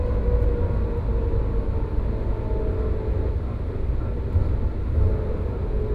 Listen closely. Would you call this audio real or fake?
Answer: real